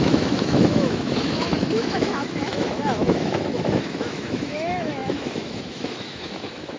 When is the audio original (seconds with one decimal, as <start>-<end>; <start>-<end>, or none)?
none